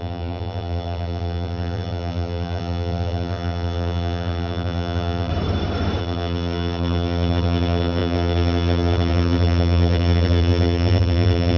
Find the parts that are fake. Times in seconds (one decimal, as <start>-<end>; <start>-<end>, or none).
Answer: 0.0-5.3; 6.0-11.6